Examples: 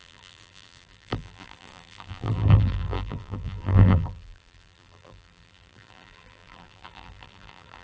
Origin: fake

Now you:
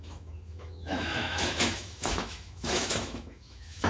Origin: fake